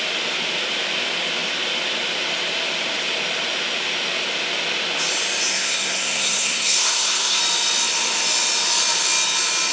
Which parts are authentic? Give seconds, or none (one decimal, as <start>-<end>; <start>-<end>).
0.0-5.5; 7.4-9.7